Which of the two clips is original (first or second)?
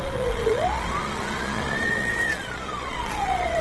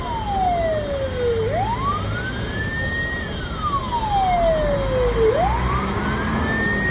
second